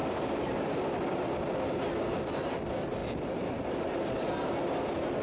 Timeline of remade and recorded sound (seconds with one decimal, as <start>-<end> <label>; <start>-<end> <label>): 0.0-5.2 recorded